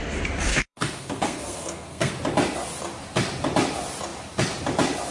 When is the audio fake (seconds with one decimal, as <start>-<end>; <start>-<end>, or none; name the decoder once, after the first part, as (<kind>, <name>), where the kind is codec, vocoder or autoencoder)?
0.5-2.1 (codec, SNAC)